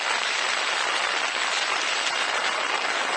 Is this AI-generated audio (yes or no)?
no